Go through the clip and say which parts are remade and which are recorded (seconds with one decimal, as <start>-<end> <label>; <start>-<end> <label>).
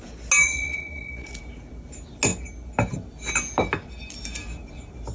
0.0-0.4 recorded; 0.4-1.3 remade; 1.3-5.1 recorded